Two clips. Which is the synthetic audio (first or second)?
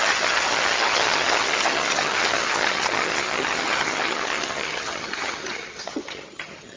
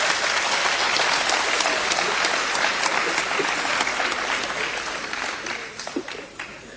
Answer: first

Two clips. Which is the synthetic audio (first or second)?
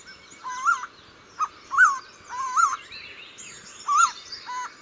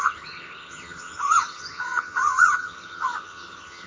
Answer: second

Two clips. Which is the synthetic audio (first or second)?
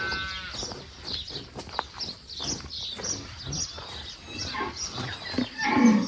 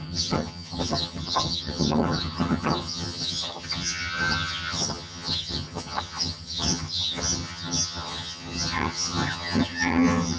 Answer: second